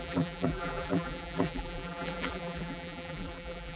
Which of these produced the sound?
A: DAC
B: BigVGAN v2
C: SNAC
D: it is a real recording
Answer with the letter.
B